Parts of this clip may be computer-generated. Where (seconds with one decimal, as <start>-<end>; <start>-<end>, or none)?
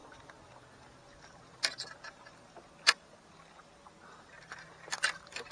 none